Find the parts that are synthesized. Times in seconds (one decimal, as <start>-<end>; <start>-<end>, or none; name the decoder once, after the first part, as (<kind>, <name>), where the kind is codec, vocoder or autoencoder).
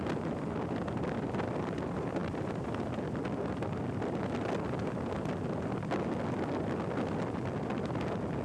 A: none